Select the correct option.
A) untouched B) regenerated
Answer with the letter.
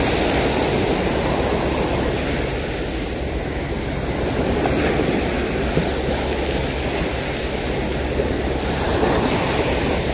A